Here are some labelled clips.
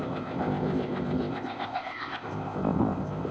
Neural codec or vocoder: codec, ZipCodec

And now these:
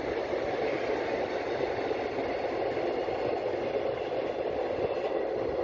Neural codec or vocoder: none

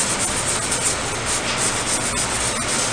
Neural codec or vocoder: none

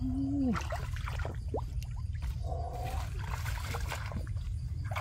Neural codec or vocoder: none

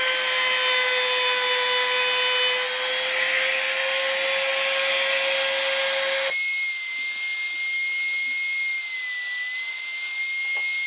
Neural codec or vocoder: none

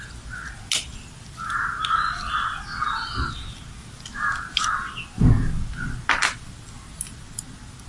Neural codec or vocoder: none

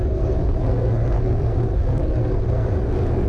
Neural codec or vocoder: codec, SNAC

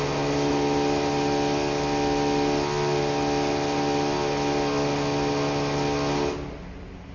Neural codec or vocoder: none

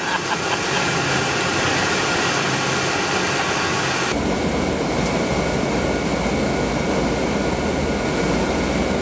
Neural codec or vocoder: none